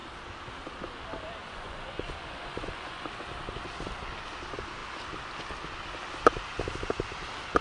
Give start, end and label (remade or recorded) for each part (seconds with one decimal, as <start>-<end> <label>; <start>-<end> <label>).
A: 0.0-1.4 recorded; 1.4-3.1 remade; 3.1-7.6 recorded